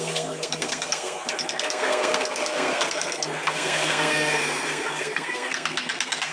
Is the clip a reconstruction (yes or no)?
yes